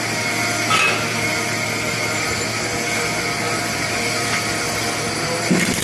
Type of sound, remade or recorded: recorded